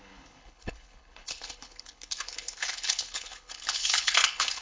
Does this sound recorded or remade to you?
remade